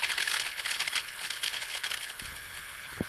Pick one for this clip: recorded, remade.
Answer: remade